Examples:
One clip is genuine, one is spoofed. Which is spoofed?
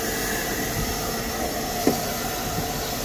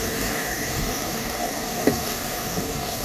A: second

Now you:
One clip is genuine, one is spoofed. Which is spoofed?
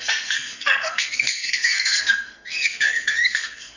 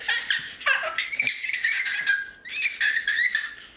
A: first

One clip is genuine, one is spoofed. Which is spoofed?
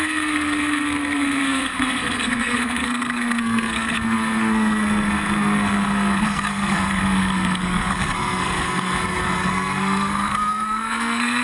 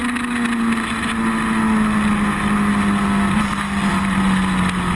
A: first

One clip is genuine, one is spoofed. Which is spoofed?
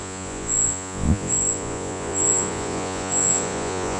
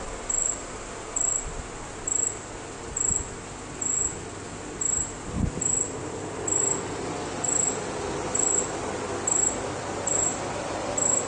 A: first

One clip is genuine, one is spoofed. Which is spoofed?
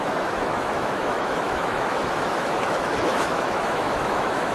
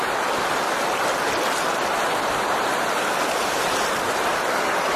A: first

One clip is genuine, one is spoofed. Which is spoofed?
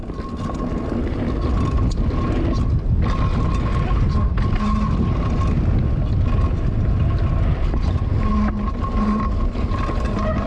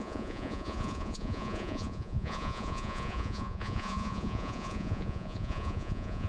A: second